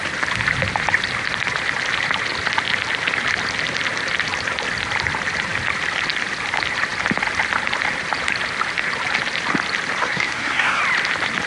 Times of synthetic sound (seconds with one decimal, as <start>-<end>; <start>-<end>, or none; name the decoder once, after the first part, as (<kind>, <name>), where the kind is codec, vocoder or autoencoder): 10.0-10.8 (codec, SNAC)